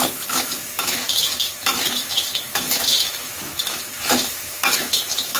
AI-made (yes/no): yes